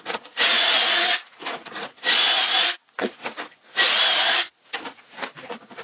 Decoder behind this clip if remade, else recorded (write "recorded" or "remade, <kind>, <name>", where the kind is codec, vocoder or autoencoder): remade, vocoder, Vocos